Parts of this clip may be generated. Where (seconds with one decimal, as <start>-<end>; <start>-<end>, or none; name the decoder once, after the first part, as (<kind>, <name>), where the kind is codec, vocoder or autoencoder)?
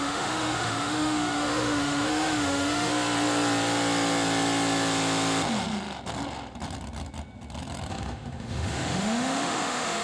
0.0-2.9 (autoencoder, DAC-VAE); 7.9-10.0